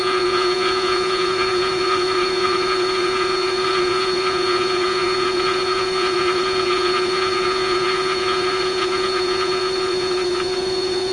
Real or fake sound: fake